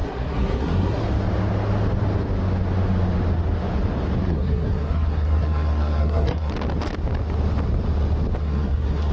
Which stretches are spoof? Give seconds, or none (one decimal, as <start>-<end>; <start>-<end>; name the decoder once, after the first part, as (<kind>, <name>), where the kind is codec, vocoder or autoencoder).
0.0-1.0 (codec, SNAC); 4.2-6.5; 8.4-9.1